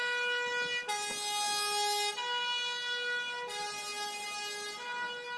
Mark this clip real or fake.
real